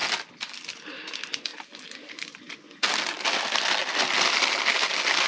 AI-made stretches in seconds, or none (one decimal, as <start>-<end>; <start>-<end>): none

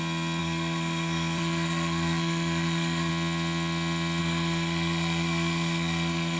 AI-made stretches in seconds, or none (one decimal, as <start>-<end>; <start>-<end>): 0.4-3.1; 4.2-6.4